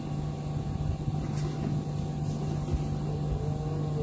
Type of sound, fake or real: real